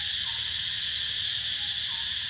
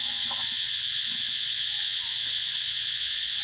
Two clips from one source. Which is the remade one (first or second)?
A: second